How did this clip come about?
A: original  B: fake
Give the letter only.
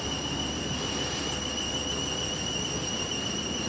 A